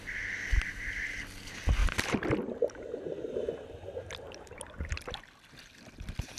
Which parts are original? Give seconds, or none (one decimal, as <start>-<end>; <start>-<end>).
0.0-6.4